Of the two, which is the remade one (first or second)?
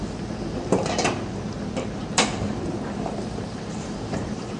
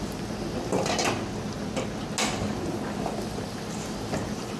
first